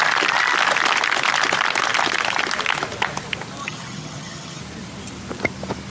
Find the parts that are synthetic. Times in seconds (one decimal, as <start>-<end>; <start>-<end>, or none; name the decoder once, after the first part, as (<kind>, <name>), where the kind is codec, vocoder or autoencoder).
3.6-4.6 (vocoder, HiFi-GAN)